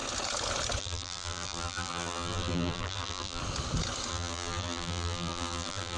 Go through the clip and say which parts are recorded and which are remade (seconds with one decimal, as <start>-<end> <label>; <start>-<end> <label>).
0.0-0.8 recorded; 0.8-3.4 remade; 3.4-4.1 recorded; 4.1-6.0 remade